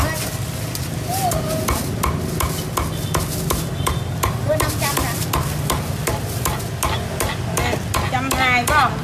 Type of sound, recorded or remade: recorded